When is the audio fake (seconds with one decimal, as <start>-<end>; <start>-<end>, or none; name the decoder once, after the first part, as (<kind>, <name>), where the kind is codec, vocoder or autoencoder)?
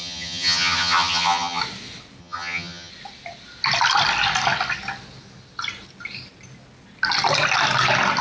0.0-1.6 (vocoder, HiFi-GAN); 2.2-2.9